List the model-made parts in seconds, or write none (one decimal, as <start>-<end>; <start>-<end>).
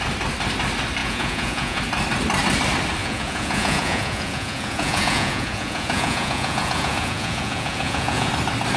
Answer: 1.0-1.8; 3.0-8.3